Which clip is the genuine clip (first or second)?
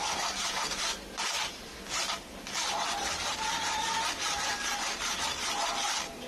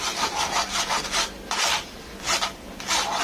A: second